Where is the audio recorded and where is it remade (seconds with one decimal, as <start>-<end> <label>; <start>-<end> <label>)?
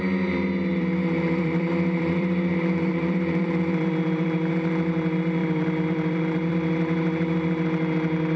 0.0-0.7 recorded; 0.7-2.5 remade; 2.5-2.9 recorded; 2.9-4.5 remade; 4.5-5.4 recorded; 5.4-6.5 remade; 6.5-8.4 recorded